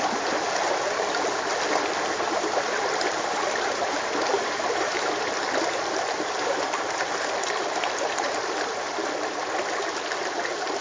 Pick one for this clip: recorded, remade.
recorded